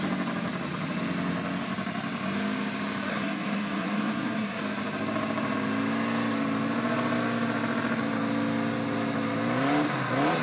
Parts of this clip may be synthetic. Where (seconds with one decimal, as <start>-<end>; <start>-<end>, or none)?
3.1-4.6